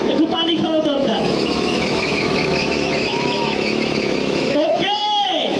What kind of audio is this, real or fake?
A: fake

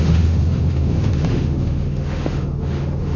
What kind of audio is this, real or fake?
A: fake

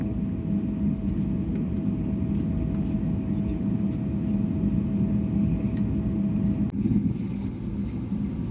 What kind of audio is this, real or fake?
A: real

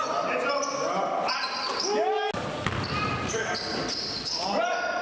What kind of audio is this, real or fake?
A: real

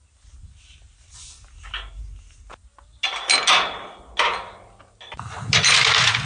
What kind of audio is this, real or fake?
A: real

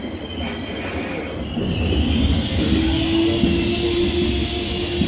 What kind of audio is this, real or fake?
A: real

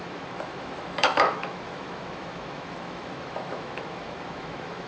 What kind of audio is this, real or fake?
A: fake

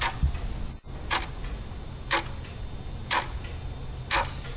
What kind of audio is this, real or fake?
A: real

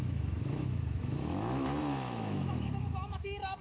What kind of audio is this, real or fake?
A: fake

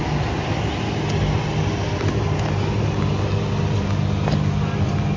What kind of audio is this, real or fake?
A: real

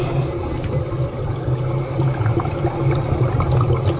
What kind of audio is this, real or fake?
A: real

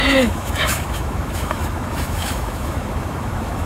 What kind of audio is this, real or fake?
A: fake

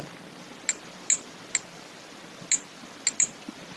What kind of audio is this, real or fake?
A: real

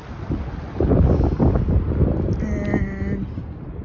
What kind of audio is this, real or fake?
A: real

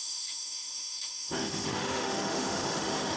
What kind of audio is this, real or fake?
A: fake